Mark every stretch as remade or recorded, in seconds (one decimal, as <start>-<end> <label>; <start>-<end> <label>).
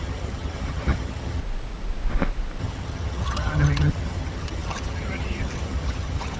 0.0-1.4 remade; 1.4-2.6 recorded; 2.6-6.4 remade